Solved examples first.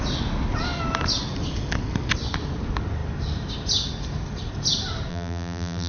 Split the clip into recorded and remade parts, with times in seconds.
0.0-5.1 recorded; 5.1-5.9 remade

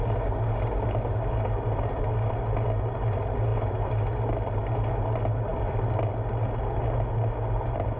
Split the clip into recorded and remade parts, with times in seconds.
0.0-5.5 recorded; 5.5-6.1 remade; 6.1-8.0 recorded

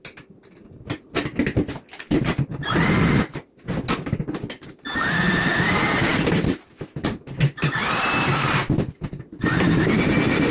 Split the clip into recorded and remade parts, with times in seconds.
0.0-6.1 recorded; 6.1-6.7 remade; 6.7-10.5 recorded